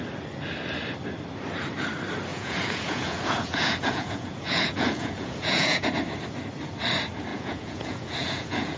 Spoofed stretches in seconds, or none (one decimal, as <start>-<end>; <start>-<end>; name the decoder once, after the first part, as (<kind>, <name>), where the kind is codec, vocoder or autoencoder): 2.3-5.9 (vocoder, Vocos); 7.3-8.8